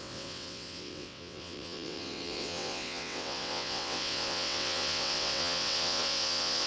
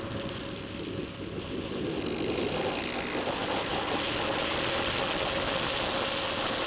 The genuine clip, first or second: second